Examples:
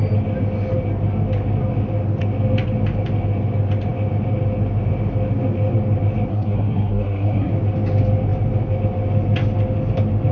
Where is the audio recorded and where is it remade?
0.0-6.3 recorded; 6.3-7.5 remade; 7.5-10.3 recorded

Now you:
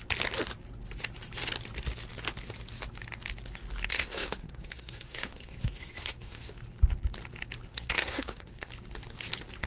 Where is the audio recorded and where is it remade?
0.0-3.9 recorded; 3.9-6.5 remade; 6.5-7.7 recorded; 7.7-8.7 remade; 8.7-9.7 recorded

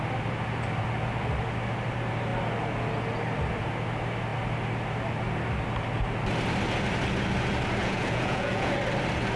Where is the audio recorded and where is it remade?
0.0-7.8 recorded; 7.8-8.8 remade; 8.8-9.4 recorded